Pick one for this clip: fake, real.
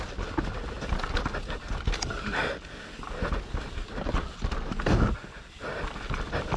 real